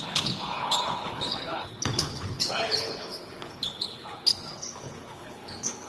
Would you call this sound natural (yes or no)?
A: no